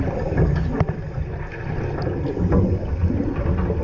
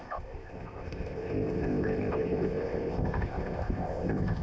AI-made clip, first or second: second